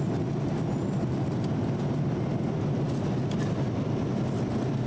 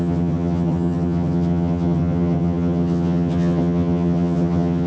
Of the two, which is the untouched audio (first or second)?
first